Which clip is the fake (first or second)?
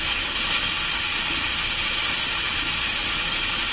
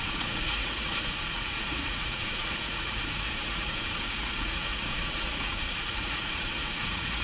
second